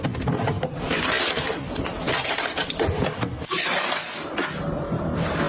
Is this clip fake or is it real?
real